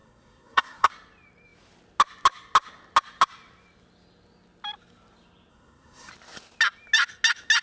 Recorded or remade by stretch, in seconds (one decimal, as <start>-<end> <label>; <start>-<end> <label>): 0.0-0.9 remade; 0.9-5.5 recorded; 5.5-6.1 remade; 6.1-7.6 recorded